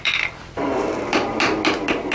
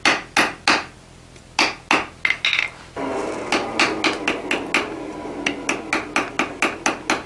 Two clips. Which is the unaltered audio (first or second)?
second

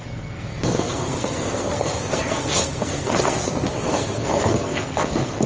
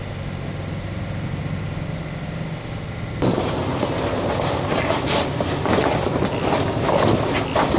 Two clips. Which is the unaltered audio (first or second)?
second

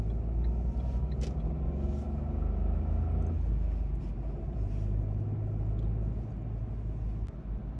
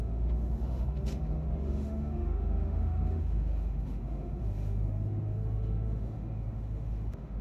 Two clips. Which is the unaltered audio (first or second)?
first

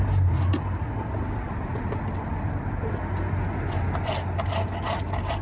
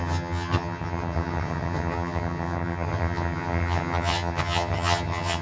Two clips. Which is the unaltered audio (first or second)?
first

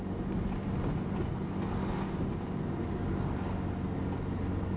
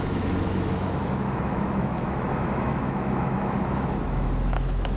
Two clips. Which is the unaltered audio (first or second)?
first